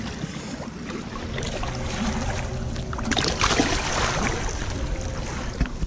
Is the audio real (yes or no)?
yes